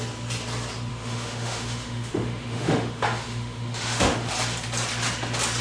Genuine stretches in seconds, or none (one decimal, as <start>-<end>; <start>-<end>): 0.0-0.9; 4.3-5.6

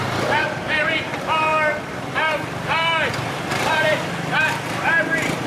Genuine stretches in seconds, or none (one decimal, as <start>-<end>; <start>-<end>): 1.5-3.3

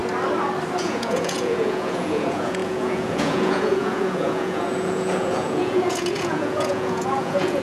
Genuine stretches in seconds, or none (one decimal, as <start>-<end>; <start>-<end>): 0.0-0.8

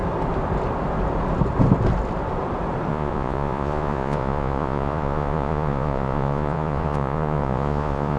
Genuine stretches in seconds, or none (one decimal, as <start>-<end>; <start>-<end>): 0.0-2.9

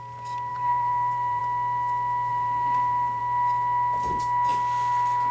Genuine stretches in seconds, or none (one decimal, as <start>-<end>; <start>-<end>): 0.0-0.5; 1.4-2.3; 3.2-5.3

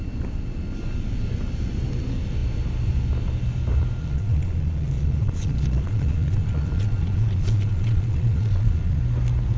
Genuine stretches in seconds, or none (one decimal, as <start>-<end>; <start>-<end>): 0.0-4.0; 9.0-9.6